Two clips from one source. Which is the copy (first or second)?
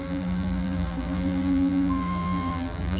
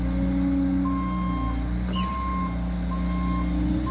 first